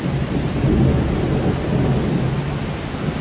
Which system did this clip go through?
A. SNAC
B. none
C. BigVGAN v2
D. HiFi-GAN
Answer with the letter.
B